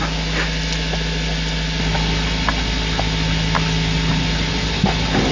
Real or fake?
real